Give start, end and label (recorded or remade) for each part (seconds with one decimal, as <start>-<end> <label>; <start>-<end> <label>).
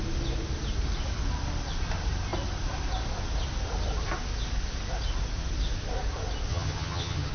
0.0-6.5 recorded; 6.5-7.3 remade